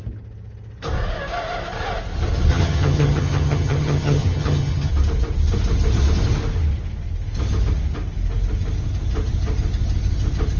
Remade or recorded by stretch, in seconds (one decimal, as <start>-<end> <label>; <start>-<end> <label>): 0.0-2.5 recorded; 2.5-4.9 remade; 4.9-10.6 recorded